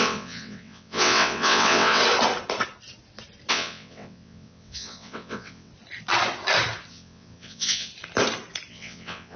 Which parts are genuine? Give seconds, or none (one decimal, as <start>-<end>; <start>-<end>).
2.0-3.5; 5.7-6.9; 7.9-8.7